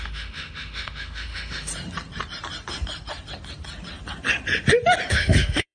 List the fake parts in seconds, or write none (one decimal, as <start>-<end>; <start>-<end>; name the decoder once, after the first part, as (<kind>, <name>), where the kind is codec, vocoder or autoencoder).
0.0-1.7 (autoencoder, DAC-VAE); 5.1-5.7